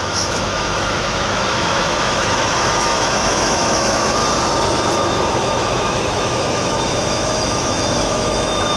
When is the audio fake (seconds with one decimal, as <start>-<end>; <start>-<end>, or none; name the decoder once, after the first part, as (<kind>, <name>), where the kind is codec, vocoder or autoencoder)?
0.0-4.2 (autoencoder, DAC-VAE); 5.3-8.8